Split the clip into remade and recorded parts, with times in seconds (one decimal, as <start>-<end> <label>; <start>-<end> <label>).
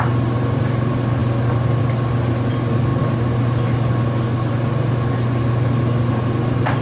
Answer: 0.0-6.8 recorded